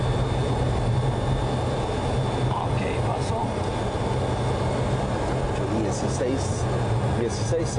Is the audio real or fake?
real